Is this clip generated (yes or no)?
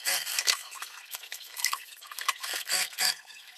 yes